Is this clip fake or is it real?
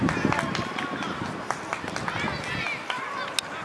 real